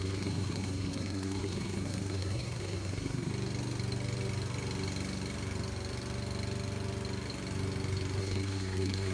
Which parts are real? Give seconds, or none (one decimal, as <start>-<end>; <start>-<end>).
3.3-8.2